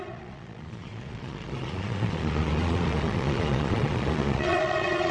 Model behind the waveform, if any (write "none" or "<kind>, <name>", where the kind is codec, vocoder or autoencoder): vocoder, Vocos